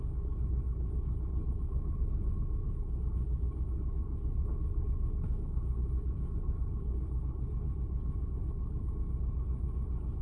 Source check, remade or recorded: remade